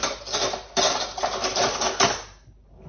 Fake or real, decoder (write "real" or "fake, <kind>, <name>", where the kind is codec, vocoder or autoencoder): real